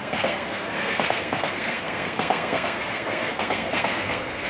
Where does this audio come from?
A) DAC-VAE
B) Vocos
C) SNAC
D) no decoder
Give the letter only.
C